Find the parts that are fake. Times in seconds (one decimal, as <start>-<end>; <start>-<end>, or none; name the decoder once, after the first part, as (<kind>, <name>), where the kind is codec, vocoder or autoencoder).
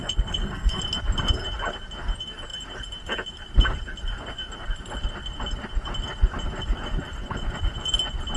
0.0-0.8 (codec, SNAC)